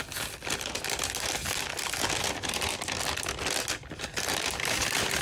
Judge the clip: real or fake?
real